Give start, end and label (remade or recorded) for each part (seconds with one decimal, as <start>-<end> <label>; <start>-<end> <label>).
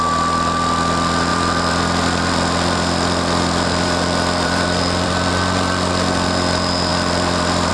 0.0-1.3 recorded; 1.3-5.9 remade; 5.9-6.9 recorded; 6.9-7.7 remade